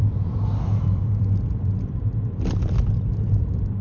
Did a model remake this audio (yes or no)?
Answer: yes